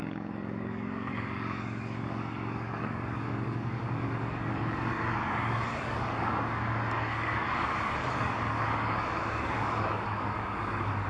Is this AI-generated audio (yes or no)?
yes